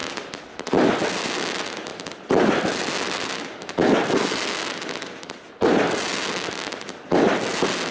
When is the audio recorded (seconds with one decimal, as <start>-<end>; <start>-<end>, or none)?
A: 0.0-7.9